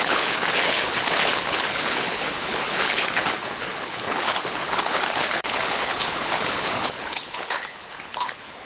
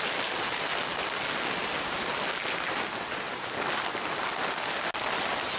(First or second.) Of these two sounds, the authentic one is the second